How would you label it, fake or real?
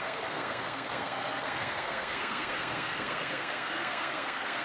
fake